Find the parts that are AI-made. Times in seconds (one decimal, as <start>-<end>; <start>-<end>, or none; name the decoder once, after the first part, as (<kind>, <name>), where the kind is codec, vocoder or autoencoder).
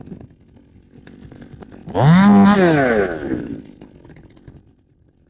none